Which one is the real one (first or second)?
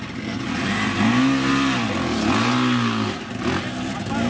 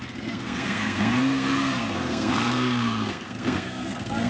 first